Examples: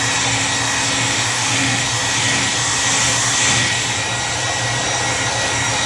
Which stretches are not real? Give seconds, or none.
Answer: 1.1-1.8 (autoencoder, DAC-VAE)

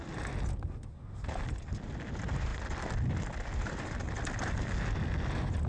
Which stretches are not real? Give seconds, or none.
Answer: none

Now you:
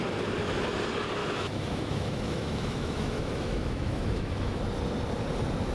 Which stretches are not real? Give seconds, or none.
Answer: 1.2-4.6 (autoencoder, DAC-VAE)

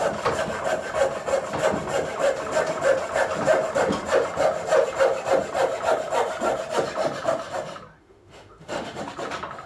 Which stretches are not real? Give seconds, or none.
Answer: 8.0-9.0 (autoencoder, DAC-VAE)

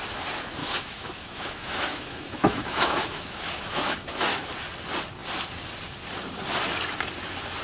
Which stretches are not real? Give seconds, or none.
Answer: 0.6-4.4 (autoencoder, DAC-VAE)